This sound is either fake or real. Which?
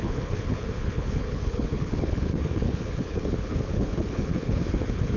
fake